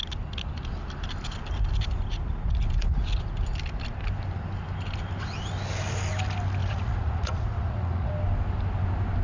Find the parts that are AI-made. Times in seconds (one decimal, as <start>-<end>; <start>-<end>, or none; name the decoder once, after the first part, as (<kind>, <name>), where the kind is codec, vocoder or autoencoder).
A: 6.6-8.1 (vocoder, Vocos)